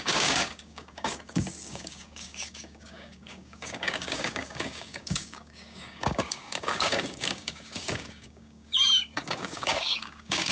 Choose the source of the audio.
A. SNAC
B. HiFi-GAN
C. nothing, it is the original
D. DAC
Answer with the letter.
D